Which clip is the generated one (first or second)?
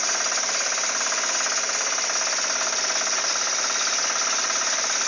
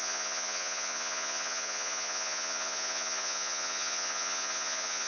second